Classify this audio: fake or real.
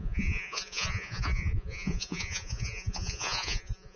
fake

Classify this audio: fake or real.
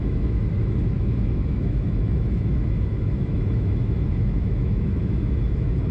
fake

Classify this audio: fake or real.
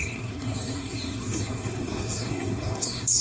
fake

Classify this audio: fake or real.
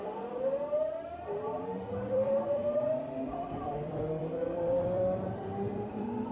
fake